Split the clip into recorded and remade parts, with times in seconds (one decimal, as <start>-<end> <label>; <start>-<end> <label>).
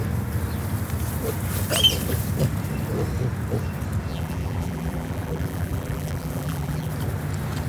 0.0-4.1 recorded; 4.1-6.9 remade; 6.9-7.7 recorded